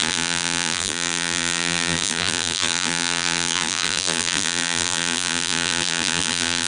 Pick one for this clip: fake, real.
fake